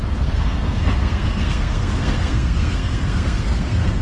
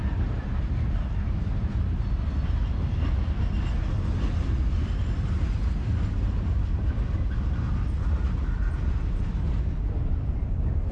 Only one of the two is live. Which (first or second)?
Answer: second